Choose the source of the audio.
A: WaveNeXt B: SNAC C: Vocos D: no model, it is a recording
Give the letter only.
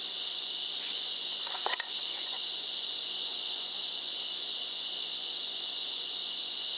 C